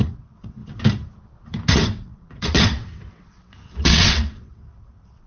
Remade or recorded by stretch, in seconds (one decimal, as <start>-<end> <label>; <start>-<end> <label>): 0.0-0.6 remade; 0.6-1.7 recorded; 1.7-5.3 remade